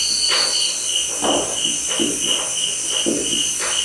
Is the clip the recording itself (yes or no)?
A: yes